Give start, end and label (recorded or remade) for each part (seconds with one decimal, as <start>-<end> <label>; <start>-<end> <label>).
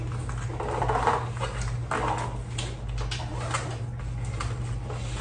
0.0-5.2 recorded